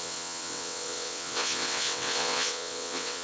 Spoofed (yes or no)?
yes